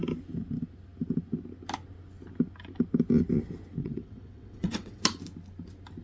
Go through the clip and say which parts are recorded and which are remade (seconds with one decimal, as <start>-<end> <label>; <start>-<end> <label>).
0.0-3.8 recorded; 3.8-5.0 remade; 5.0-6.0 recorded